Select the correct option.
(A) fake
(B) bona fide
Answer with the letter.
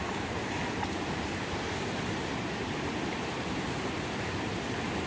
A